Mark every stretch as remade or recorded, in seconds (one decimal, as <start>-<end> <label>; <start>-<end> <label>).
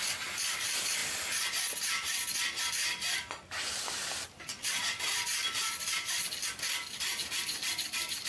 0.0-1.0 remade; 1.0-2.6 recorded; 2.6-8.3 remade